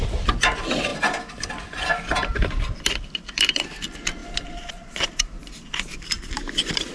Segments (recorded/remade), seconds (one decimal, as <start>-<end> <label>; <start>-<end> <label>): 0.0-6.9 recorded